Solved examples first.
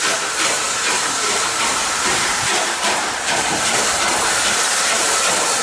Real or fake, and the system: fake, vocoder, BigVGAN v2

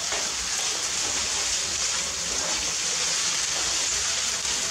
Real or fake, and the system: real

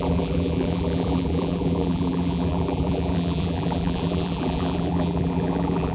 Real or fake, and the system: fake, vocoder, BigVGAN v2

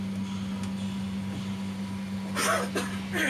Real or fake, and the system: real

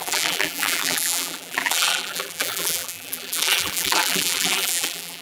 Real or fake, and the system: fake, vocoder, BigVGAN v2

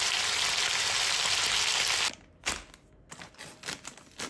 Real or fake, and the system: real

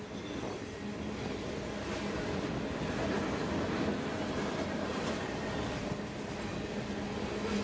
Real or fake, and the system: real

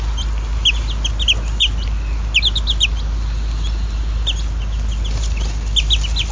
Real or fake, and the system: real